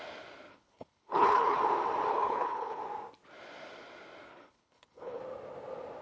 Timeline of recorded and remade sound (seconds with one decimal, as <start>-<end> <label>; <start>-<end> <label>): 0.0-0.5 recorded; 0.5-1.6 remade; 1.6-2.1 recorded; 2.1-2.8 remade; 2.8-4.3 recorded; 4.3-5.2 remade; 5.2-6.0 recorded